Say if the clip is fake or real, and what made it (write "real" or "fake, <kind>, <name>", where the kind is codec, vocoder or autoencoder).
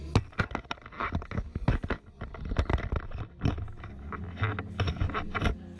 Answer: real